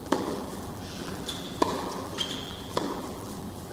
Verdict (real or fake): fake